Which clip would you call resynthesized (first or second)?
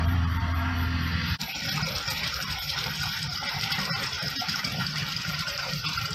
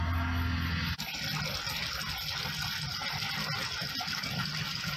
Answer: first